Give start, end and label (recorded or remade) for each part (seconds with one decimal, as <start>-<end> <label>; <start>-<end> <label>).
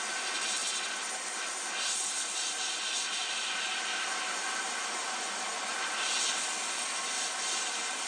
0.0-8.1 recorded